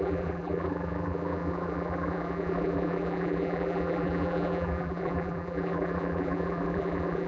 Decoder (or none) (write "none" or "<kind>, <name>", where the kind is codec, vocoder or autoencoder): vocoder, BigVGAN v2